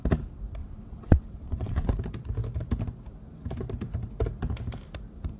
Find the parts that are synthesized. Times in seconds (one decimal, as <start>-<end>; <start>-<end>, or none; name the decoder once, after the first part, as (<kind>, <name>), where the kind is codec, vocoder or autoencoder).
0.6-1.9 (vocoder, WaveNeXt)

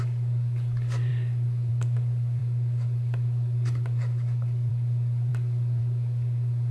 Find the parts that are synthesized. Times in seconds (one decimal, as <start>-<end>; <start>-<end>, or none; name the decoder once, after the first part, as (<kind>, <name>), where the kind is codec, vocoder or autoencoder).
0.0-6.7 (codec, DAC)